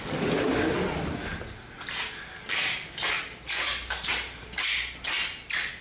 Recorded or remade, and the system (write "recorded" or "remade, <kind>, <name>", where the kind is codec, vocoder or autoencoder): recorded